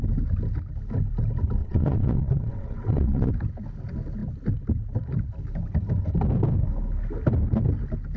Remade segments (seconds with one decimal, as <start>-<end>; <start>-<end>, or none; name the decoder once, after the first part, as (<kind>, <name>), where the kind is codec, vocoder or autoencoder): 1.6-3.3 (vocoder, WaveNeXt)